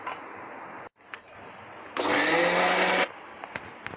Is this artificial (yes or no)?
no